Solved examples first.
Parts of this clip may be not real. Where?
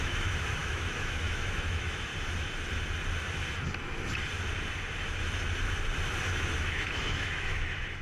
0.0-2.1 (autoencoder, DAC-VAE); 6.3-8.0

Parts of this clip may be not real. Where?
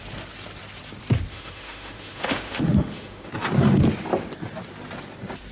1.3-3.3 (autoencoder, DAC-VAE)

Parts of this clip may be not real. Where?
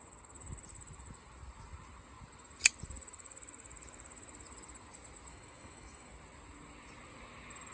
5.3-6.1 (autoencoder, DAC-VAE)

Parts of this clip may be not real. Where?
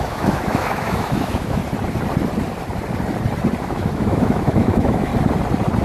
0.0-1.6 (autoencoder, DAC-VAE); 3.6-5.1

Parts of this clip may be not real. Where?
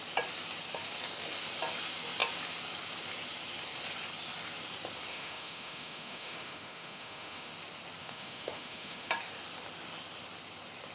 5.1-7.5 (autoencoder, DAC-VAE); 8.0-9.1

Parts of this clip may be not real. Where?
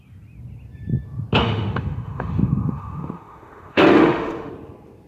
1.4-4.5 (autoencoder, DAC-VAE)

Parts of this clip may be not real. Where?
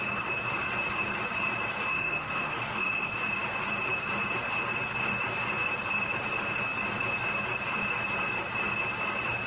1.9-3.1 (autoencoder, DAC-VAE)